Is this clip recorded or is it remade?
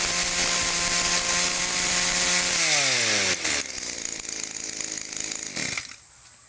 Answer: recorded